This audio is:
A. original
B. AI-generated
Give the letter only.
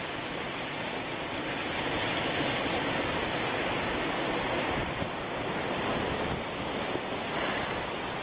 A